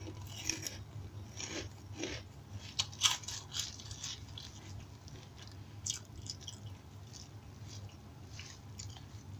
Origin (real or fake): real